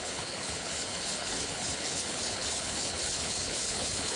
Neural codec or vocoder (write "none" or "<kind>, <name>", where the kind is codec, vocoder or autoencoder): codec, HILCodec